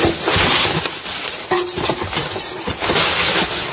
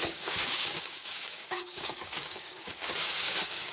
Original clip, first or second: first